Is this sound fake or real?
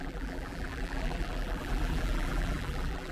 fake